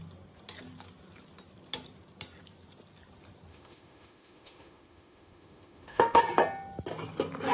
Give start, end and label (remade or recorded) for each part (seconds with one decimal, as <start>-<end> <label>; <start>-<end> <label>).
0.0-3.5 recorded; 3.5-6.2 remade; 6.2-7.5 recorded